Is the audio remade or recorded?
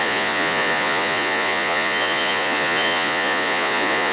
remade